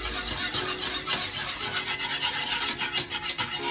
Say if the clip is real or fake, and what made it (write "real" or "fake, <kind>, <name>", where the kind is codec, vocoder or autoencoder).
real